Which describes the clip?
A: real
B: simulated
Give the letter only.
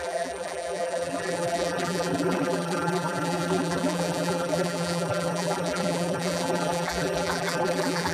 B